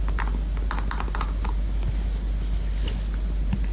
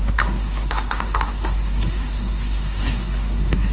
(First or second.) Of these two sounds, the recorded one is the first